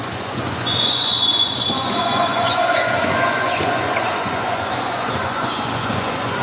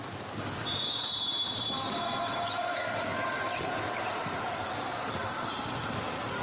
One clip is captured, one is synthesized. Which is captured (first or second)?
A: second